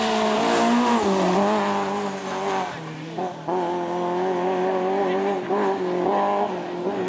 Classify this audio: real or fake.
real